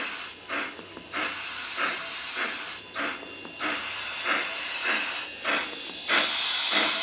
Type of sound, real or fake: real